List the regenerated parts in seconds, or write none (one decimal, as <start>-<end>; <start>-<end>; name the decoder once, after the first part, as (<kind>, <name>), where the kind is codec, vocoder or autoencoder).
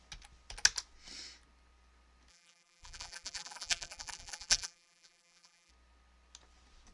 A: 2.3-5.7 (vocoder, BigVGAN v2)